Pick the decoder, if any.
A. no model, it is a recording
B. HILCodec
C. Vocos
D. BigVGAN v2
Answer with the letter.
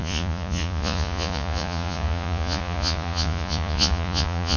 C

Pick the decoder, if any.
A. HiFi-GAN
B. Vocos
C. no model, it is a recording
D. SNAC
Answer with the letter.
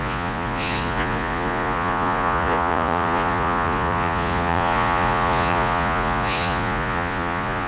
B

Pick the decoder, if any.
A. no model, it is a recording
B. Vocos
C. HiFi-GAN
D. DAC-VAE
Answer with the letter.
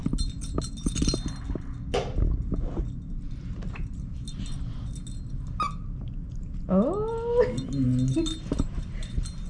A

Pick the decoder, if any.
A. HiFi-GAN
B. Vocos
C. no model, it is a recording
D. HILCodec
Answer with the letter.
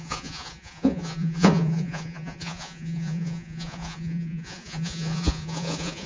B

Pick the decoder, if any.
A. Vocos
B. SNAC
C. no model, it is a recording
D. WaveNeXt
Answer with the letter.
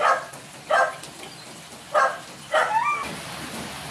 C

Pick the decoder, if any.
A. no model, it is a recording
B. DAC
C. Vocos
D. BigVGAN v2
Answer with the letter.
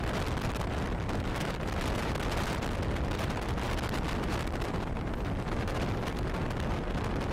A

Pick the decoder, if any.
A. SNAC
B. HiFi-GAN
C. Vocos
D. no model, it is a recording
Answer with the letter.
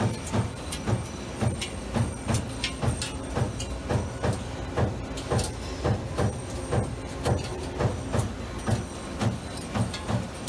D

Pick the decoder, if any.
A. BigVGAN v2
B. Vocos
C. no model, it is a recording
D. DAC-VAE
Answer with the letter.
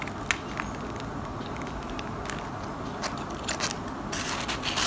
C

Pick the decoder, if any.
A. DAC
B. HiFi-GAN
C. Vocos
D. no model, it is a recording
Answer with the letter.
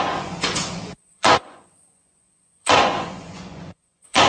C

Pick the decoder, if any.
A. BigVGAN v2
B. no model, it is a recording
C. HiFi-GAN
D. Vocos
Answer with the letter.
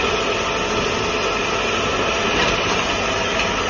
B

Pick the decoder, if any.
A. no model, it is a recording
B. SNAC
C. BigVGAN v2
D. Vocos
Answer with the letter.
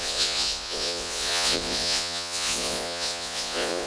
D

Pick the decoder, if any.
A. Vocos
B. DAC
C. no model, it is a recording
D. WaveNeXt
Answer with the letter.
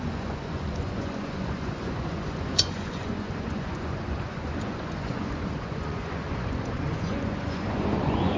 A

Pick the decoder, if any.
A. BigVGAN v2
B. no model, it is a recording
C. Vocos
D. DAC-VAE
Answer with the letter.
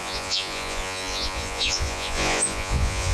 C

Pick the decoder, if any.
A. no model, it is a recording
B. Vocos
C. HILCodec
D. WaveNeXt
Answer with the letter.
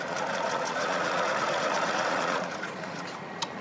B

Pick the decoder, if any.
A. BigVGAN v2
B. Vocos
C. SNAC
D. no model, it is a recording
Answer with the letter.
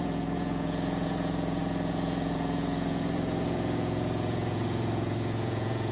B